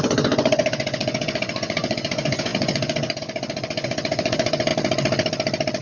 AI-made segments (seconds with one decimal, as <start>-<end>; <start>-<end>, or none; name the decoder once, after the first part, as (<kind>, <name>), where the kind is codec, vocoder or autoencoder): 0.0-4.7 (vocoder, Vocos)